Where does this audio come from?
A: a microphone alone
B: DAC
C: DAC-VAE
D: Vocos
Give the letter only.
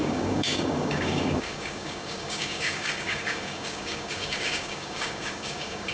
B